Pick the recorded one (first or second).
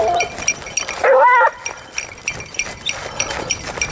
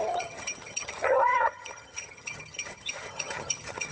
first